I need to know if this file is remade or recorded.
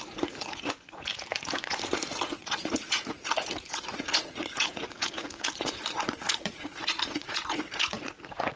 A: remade